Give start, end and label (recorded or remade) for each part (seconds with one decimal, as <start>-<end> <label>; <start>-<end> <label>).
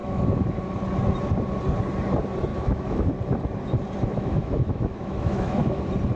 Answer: 0.0-0.6 remade; 0.6-2.5 recorded; 2.5-3.1 remade; 3.1-4.1 recorded; 4.1-5.8 remade; 5.8-6.2 recorded